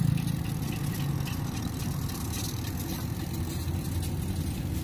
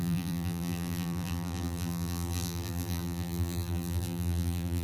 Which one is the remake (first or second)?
second